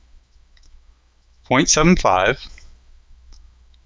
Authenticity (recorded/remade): remade